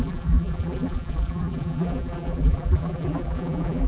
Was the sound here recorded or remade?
remade